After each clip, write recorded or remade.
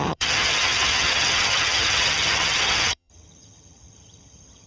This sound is remade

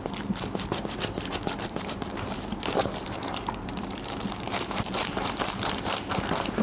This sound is remade